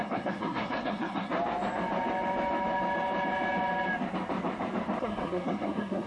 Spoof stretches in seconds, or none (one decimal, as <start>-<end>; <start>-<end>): 0.0-1.3; 5.0-6.1

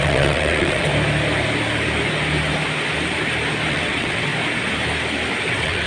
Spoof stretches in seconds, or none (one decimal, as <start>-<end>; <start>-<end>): 0.0-0.9; 3.7-4.3; 5.5-5.9